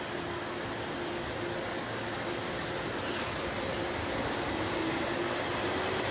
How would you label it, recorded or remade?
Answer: recorded